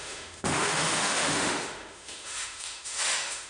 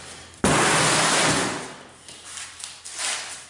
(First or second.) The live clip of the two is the second